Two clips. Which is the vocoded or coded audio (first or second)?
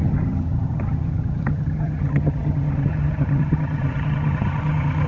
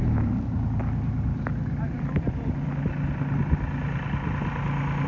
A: first